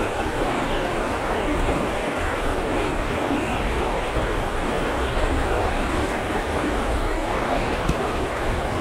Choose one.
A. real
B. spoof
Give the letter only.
B